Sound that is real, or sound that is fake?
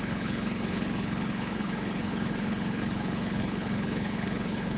fake